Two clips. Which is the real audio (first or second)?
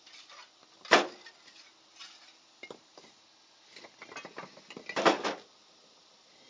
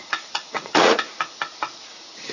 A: first